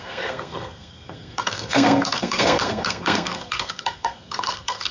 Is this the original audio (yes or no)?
no